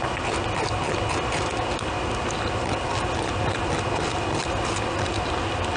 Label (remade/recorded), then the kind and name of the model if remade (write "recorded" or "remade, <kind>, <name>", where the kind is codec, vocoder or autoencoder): recorded